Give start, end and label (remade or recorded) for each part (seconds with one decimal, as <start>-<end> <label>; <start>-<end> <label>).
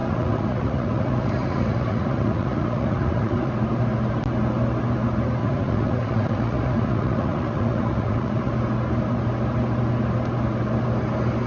0.0-3.5 remade; 3.5-5.4 recorded; 5.4-8.5 remade; 8.5-11.5 recorded